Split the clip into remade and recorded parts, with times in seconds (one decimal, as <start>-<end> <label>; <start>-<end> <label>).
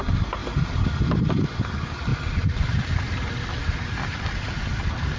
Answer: 0.0-5.2 recorded